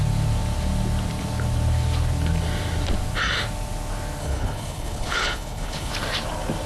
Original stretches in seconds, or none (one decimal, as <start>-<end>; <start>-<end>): 0.0-4.2; 5.9-6.7